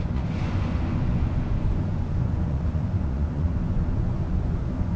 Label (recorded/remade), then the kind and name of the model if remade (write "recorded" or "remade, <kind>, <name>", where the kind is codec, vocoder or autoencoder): remade, vocoder, Vocos